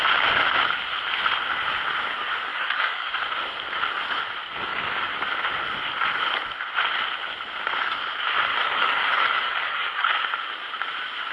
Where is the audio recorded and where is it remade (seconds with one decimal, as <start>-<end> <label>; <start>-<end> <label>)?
0.0-2.5 recorded; 2.5-3.1 remade; 3.1-4.7 recorded; 4.7-5.2 remade; 5.2-8.5 recorded; 8.5-10.1 remade; 10.1-11.3 recorded